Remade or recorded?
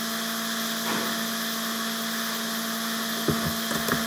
recorded